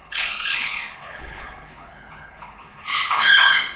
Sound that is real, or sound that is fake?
fake